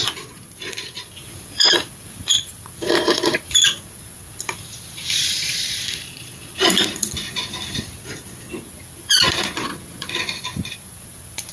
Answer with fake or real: fake